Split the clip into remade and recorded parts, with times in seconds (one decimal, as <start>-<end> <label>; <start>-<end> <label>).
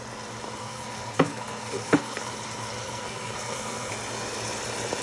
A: 0.0-0.6 recorded; 0.6-2.2 remade; 2.2-2.8 recorded; 2.8-3.9 remade; 3.9-5.0 recorded